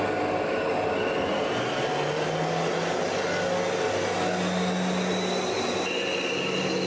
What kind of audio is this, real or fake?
real